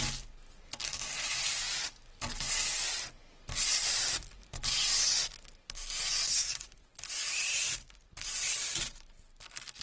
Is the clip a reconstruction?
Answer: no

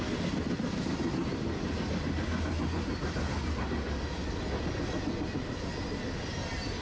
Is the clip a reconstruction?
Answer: no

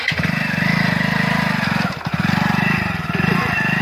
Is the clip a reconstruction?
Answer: no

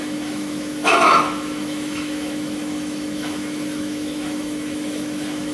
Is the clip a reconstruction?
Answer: yes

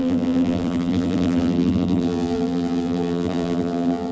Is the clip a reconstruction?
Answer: yes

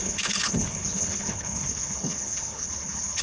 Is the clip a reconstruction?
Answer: yes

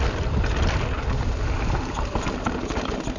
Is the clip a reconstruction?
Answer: no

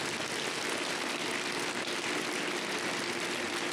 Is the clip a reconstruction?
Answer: no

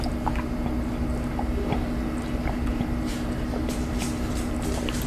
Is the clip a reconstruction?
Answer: no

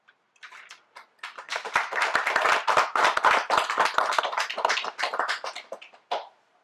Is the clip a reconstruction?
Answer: no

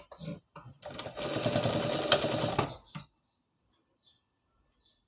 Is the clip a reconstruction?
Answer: no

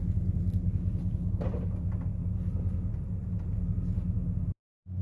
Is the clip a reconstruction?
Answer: no